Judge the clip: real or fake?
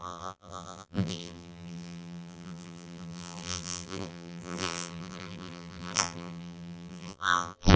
fake